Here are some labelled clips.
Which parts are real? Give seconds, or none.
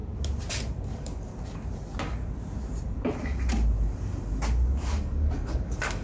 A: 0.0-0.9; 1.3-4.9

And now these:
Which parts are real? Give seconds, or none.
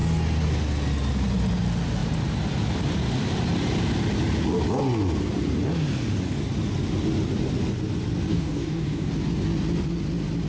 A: 0.0-8.3; 9.1-10.5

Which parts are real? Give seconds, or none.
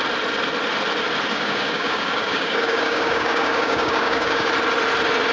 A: 0.0-1.3; 4.5-5.3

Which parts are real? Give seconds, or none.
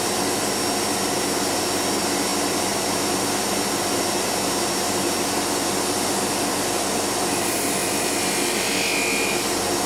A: 0.0-9.9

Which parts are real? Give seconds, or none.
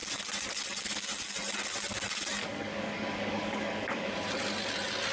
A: 0.0-2.4; 4.1-5.1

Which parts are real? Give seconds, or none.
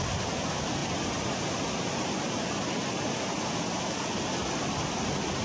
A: 0.0-5.4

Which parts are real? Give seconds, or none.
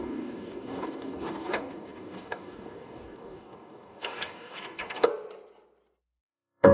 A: 5.1-6.2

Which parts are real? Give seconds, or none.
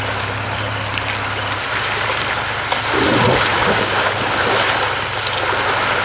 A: 0.0-3.5; 4.2-6.0